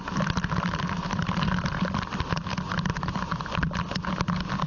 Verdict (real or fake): real